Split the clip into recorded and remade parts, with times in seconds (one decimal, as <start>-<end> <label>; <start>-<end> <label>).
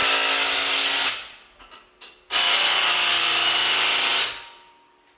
0.0-5.2 recorded